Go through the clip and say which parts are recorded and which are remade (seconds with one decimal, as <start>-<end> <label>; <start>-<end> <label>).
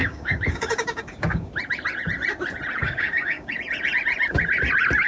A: 0.0-1.5 remade; 1.5-2.8 recorded; 2.8-3.5 remade; 3.5-5.1 recorded